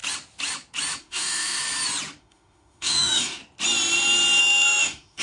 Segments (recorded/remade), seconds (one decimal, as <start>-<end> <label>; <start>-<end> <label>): 0.0-1.0 recorded; 1.0-1.6 remade; 1.6-2.2 recorded; 2.2-3.4 remade; 3.4-4.4 recorded; 4.4-5.2 remade